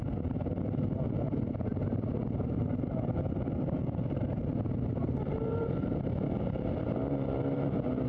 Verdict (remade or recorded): remade